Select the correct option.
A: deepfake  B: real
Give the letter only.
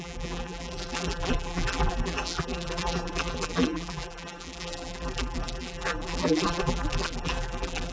A